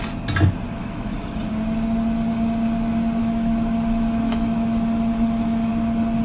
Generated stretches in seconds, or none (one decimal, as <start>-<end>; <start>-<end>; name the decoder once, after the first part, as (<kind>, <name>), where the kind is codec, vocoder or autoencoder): 0.8-1.4 (autoencoder, DAC-VAE); 3.2-5.7